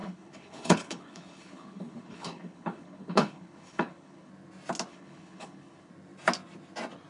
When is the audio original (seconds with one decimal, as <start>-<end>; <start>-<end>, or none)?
4.3-4.9; 5.9-7.1